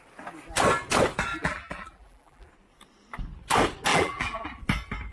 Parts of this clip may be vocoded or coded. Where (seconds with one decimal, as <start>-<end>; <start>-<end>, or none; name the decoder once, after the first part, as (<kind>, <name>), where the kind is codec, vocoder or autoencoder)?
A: 1.3-2.5 (vocoder, BigVGAN v2); 3.9-4.6